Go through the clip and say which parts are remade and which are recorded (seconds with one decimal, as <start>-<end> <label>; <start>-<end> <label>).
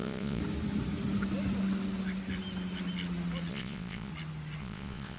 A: 0.0-0.4 remade; 0.4-3.5 recorded; 3.5-4.1 remade; 4.1-4.6 recorded; 4.6-5.2 remade